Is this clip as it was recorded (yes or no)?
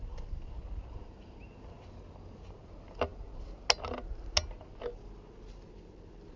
yes